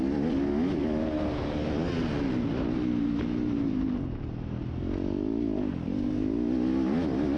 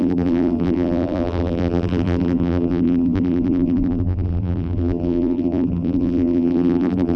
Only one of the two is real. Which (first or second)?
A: first